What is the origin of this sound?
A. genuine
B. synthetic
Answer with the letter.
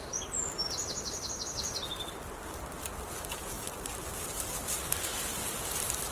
A